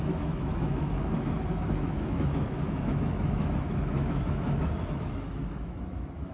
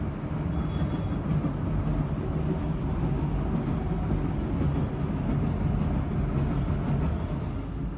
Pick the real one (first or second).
second